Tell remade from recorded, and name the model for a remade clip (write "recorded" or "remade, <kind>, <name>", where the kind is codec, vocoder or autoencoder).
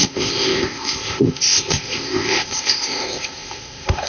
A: remade, codec, ZipCodec